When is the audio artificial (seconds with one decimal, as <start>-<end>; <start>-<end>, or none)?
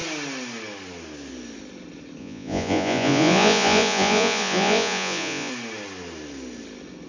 2.2-5.5